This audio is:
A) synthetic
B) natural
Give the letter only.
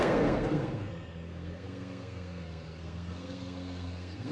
A